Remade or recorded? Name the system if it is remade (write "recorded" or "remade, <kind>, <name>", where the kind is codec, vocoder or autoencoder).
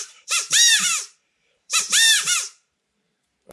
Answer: remade, vocoder, BigVGAN v2